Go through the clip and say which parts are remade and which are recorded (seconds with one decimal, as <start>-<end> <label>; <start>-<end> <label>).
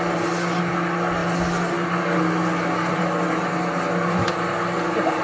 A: 0.0-5.2 recorded